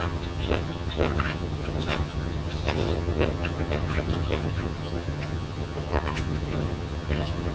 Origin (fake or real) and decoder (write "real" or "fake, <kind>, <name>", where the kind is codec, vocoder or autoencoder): fake, vocoder, HiFi-GAN